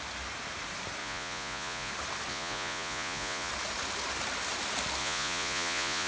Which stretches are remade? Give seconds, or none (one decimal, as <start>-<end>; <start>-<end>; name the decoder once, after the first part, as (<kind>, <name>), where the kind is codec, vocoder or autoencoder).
1.0-1.9 (vocoder, Vocos); 2.3-3.5; 5.0-6.1

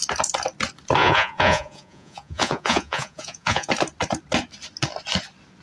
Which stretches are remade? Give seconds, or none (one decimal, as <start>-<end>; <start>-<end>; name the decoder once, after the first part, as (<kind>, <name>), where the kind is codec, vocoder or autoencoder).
1.0-3.7 (vocoder, Vocos)

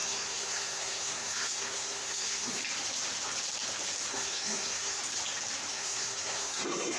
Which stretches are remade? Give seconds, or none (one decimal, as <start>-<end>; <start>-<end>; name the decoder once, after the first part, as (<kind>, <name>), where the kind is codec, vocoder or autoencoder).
0.0-2.6 (codec, SNAC); 4.1-5.0; 5.7-7.0

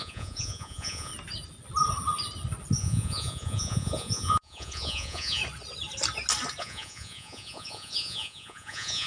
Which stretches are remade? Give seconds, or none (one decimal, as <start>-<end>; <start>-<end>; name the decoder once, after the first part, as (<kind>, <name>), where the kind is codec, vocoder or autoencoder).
0.0-1.1 (vocoder, Vocos); 2.8-5.4; 6.6-9.1

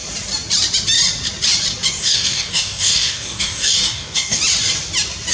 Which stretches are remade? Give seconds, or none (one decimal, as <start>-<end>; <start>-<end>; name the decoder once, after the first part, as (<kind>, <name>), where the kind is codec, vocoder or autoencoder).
2.0-4.4 (codec, DAC)